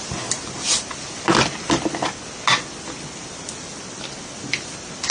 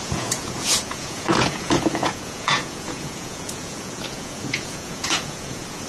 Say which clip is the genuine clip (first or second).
first